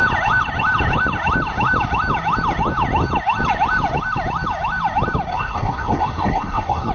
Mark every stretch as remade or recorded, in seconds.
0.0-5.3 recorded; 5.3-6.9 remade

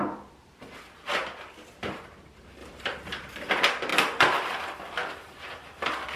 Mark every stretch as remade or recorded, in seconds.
0.0-2.6 recorded; 2.6-3.5 remade; 3.5-3.9 recorded; 3.9-4.6 remade; 4.6-6.2 recorded

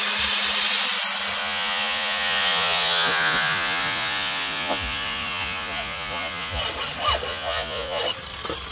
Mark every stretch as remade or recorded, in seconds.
0.0-1.4 recorded; 1.4-6.6 remade; 6.6-7.3 recorded; 7.3-8.0 remade; 8.0-8.7 recorded